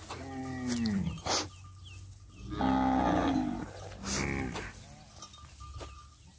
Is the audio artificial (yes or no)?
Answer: no